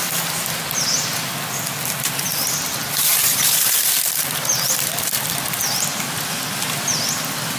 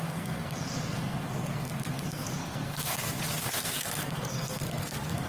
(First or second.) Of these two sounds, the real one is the first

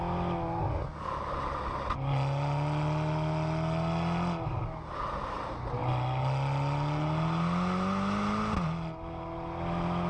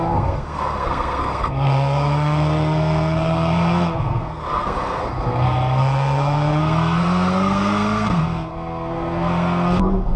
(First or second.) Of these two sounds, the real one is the first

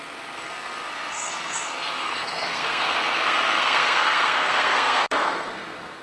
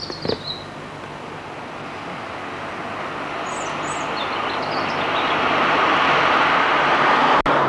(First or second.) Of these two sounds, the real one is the second